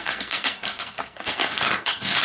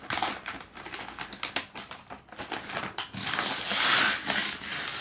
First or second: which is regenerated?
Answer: first